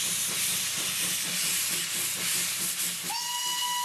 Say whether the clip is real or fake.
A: real